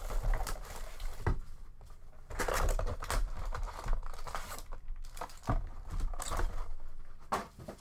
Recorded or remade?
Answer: recorded